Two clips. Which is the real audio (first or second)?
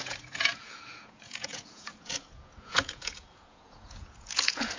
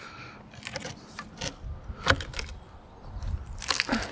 second